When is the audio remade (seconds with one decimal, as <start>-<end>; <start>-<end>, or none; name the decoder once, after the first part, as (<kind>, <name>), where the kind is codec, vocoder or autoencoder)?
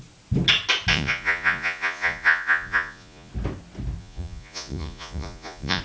0.9-3.3 (vocoder, Vocos); 4.0-5.8